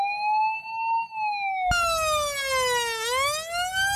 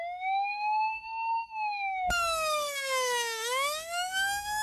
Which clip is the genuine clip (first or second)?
first